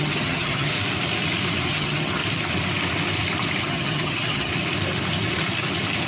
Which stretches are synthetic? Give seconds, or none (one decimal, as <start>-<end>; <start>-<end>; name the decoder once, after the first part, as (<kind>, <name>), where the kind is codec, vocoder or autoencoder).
0.0-0.7 (vocoder, HiFi-GAN); 1.7-2.2; 3.6-4.5